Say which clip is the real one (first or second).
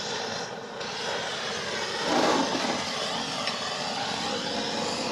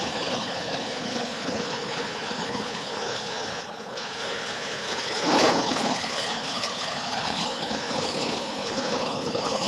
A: first